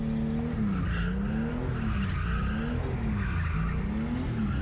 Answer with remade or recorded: recorded